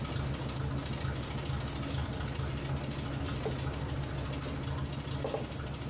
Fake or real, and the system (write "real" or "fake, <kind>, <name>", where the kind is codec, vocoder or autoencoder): real